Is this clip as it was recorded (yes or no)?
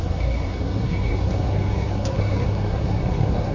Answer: no